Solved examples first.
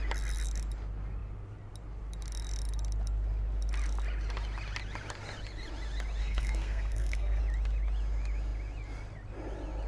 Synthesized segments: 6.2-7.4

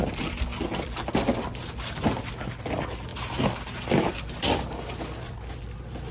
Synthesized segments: none